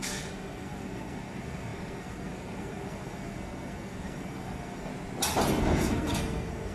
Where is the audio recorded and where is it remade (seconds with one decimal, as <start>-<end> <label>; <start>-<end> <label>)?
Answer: 0.0-4.9 remade; 4.9-5.6 recorded; 5.6-6.7 remade